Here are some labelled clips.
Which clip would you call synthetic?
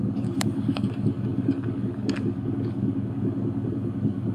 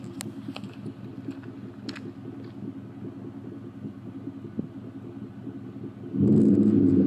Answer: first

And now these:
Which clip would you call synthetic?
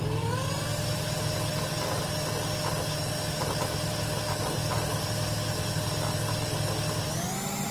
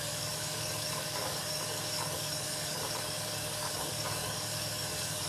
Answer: second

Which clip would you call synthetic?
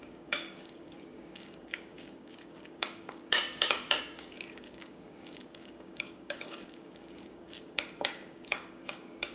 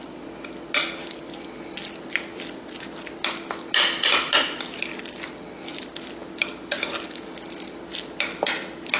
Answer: first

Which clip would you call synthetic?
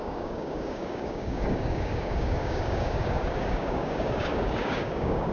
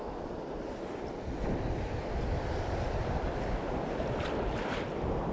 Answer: first